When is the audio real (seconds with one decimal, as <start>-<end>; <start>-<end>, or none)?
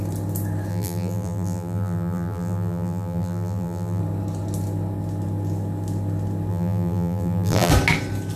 0.0-0.7; 4.0-6.5; 7.7-8.4